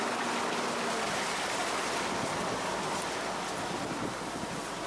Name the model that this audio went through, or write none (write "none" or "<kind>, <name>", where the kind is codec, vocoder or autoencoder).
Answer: none